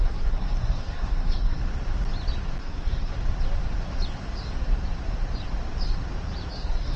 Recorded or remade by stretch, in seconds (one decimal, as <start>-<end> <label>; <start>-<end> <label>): 0.0-1.6 remade; 1.6-2.6 recorded; 2.6-3.1 remade; 3.1-6.5 recorded; 6.5-7.0 remade